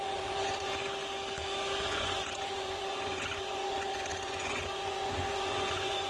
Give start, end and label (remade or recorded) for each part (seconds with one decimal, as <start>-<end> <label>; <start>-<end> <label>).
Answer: 0.0-0.7 remade; 0.7-1.8 recorded; 1.8-6.1 remade